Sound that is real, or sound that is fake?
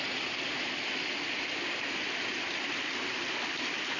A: real